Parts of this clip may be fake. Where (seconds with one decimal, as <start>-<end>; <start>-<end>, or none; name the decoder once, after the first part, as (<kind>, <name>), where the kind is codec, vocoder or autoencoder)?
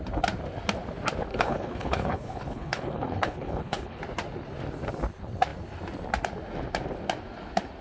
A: 1.3-4.0 (codec, HILCodec)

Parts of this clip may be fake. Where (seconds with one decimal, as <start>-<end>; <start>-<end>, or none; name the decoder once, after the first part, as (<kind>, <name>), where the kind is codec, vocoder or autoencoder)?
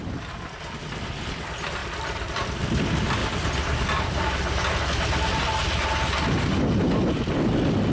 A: 3.2-4.7 (vocoder, BigVGAN v2)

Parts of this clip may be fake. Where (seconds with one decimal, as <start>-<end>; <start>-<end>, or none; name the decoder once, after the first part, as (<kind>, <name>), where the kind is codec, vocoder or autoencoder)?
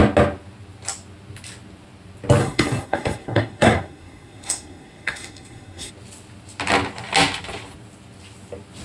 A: 2.4-5.9 (codec, SNAC)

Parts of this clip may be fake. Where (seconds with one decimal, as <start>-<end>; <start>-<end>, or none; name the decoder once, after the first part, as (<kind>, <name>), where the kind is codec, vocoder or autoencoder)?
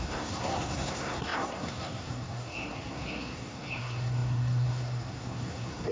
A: 0.0-5.9 (codec, SNAC)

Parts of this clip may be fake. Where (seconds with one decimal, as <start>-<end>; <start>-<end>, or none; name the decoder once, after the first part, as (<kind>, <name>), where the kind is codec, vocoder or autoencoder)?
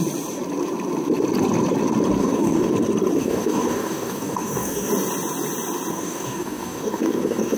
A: 2.2-2.7 (codec, DAC); 3.2-4.9; 5.9-7.6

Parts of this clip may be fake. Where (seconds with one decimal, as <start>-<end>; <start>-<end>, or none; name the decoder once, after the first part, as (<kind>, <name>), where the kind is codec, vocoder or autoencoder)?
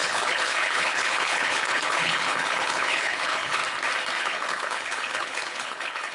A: 0.0-3.6 (codec, HILCodec); 4.2-6.1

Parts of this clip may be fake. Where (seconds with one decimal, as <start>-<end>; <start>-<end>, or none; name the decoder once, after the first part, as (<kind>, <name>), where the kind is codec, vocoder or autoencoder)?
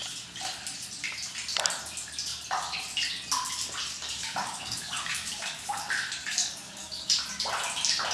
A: 4.0-5.8 (codec, DAC); 6.2-7.2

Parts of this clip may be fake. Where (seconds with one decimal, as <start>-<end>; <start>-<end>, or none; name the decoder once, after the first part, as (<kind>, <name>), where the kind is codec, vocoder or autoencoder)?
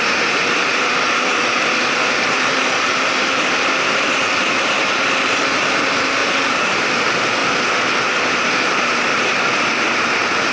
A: 0.0-7.4 (vocoder, BigVGAN v2); 8.4-9.1; 10.0-10.5